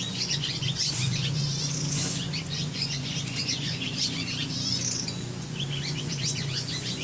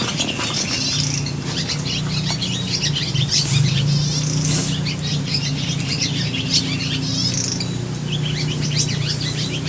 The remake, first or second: first